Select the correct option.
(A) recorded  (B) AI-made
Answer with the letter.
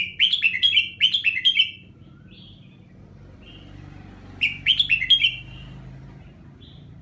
A